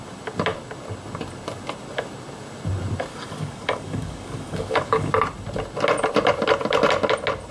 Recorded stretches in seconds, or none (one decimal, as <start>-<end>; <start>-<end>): 0.0-3.1; 5.1-7.5